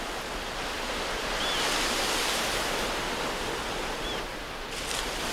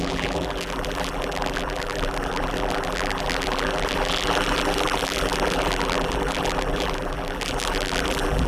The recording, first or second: first